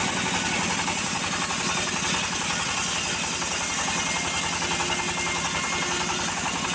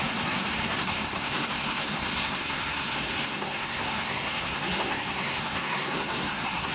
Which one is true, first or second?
first